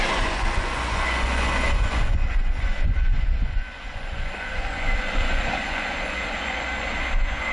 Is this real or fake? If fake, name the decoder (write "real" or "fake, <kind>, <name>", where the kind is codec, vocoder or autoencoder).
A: fake, vocoder, Vocos